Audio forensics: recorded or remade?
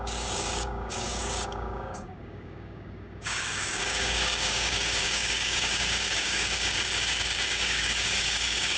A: remade